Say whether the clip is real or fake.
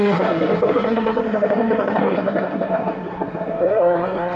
fake